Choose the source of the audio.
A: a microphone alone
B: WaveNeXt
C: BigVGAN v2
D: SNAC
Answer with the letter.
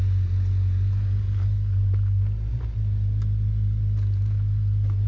A